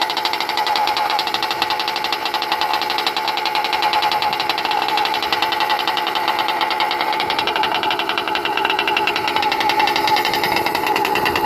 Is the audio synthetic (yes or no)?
yes